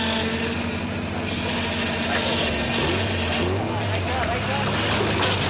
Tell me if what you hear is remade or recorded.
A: recorded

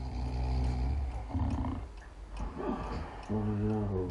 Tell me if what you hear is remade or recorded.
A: recorded